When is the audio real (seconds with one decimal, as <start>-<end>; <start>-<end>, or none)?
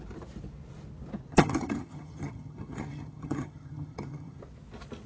0.0-1.3; 4.4-5.1